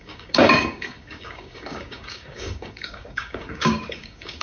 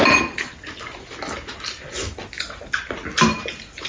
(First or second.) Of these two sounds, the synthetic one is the first